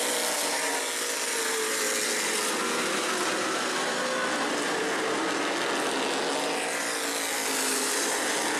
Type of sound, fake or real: real